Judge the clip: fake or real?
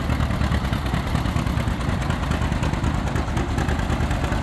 real